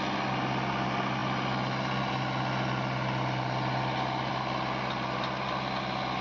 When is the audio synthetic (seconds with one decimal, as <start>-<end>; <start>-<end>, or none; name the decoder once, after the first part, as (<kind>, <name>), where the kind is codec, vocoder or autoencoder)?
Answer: none